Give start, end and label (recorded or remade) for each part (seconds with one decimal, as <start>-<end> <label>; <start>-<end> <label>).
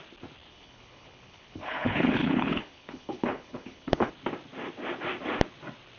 0.0-0.5 recorded; 0.5-4.1 remade; 4.1-6.0 recorded